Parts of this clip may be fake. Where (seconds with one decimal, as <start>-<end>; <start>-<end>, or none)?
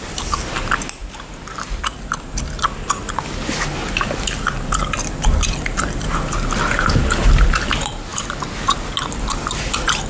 none